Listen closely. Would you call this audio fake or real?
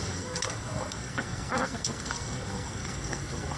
fake